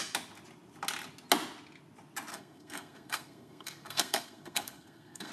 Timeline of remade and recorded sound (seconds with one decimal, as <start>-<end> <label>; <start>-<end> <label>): 0.0-2.3 recorded; 2.3-5.3 remade